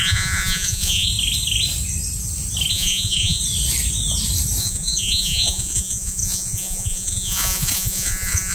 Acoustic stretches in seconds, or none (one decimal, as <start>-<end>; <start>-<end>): 1.1-2.7; 3.4-4.6